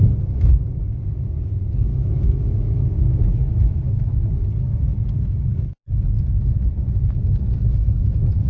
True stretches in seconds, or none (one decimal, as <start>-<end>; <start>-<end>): 0.0-1.9; 4.3-8.5